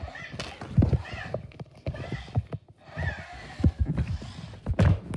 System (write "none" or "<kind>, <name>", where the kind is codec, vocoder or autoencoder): none